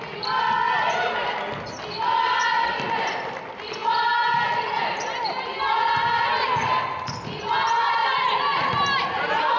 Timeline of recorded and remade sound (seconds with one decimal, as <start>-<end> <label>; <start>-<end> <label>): 0.0-8.0 recorded; 8.0-9.6 remade